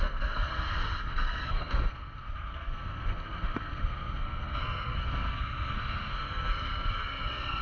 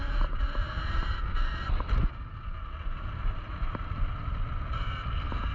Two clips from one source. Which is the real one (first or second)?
second